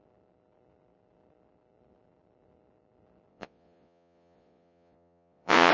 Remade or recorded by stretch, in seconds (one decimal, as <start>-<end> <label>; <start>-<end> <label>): 0.0-3.3 recorded; 3.3-5.7 remade